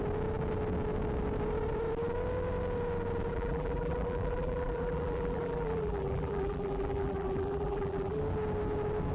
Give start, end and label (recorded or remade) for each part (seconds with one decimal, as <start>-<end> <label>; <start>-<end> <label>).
0.0-3.3 recorded; 3.3-8.2 remade; 8.2-9.1 recorded